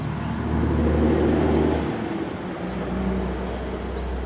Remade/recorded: recorded